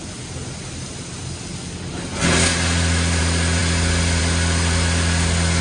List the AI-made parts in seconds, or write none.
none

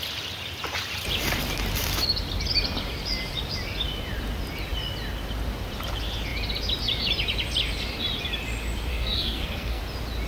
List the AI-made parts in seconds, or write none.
8.9-9.8 (codec, SNAC)

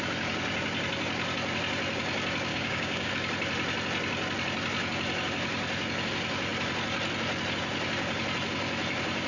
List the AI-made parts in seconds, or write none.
2.5-3.1 (codec, DAC)

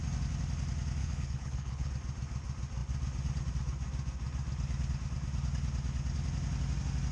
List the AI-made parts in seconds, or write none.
1.0-1.9 (codec, HILCodec)